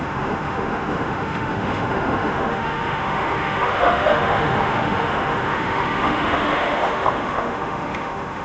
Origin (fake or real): fake